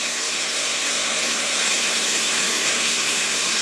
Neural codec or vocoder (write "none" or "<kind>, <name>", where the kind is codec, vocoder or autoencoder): codec, SNAC